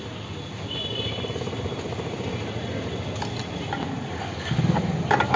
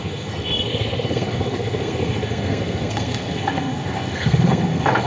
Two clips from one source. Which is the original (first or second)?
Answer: first